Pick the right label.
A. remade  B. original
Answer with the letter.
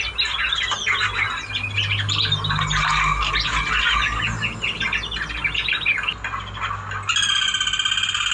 B